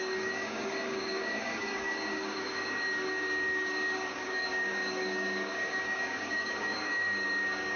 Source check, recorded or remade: remade